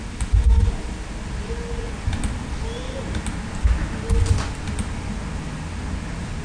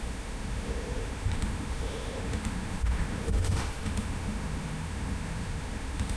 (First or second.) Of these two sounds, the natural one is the first